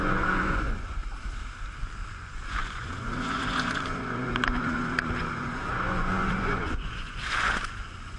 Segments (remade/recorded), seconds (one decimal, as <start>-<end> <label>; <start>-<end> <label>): 0.0-1.0 remade; 1.0-2.1 recorded; 2.1-8.2 remade